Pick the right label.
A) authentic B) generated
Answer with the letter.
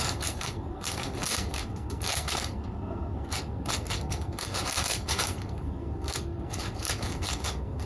B